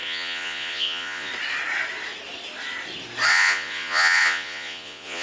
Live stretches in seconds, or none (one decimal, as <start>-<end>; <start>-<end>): 1.3-3.3